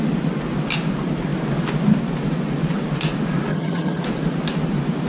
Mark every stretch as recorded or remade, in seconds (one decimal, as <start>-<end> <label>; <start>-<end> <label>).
0.0-3.5 recorded; 3.5-4.0 remade; 4.0-5.1 recorded